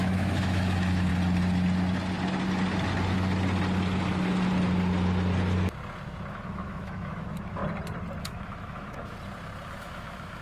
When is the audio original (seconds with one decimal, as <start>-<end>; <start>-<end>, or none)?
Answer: 1.1-6.3; 7.6-8.2; 9.1-9.8